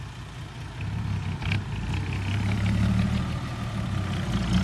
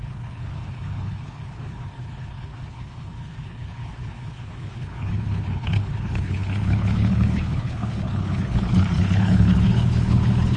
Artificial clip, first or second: second